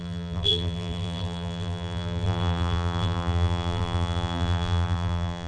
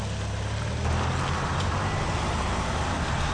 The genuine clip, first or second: second